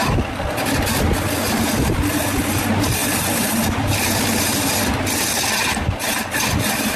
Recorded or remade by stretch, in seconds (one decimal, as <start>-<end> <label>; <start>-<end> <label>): 0.0-3.0 recorded; 3.0-4.2 remade; 4.2-7.0 recorded